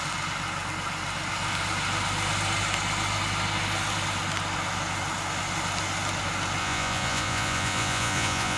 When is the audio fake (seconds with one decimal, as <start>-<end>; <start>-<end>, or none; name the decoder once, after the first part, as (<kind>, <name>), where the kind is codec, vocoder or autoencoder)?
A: 6.6-8.6 (vocoder, Vocos)